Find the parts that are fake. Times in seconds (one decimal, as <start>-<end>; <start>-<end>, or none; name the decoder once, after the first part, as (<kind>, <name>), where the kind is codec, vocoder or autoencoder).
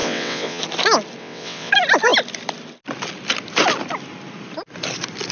0.0-0.6 (vocoder, WaveNeXt); 1.2-1.7